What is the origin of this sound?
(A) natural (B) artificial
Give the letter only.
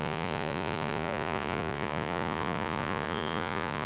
B